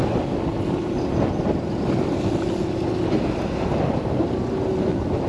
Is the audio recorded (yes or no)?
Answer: yes